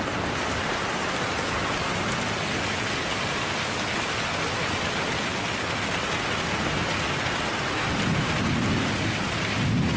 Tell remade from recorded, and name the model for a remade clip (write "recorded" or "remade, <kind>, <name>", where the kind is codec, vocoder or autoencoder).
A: recorded